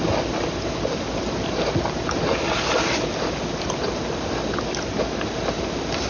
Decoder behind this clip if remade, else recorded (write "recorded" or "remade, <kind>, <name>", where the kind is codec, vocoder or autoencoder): recorded